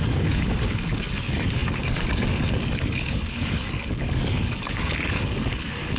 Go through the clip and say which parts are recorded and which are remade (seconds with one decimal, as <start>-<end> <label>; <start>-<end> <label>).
0.0-6.0 remade